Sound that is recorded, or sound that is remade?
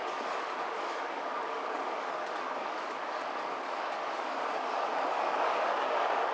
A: remade